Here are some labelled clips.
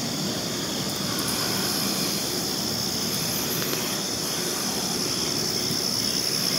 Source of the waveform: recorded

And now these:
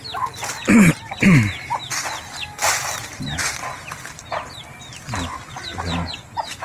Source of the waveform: recorded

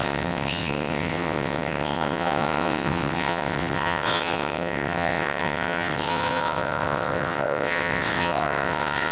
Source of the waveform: remade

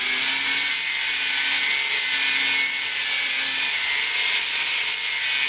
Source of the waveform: recorded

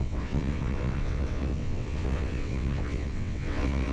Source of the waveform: remade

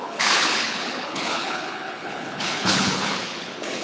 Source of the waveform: remade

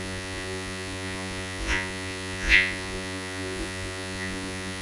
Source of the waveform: remade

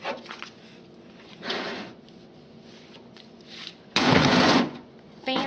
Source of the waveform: remade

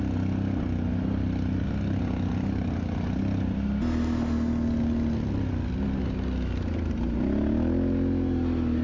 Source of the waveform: recorded